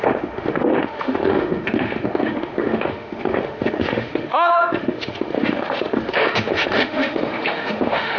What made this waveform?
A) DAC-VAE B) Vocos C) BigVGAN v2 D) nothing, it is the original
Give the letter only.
A